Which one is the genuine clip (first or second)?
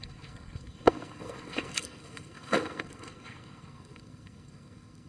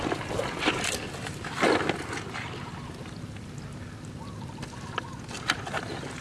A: second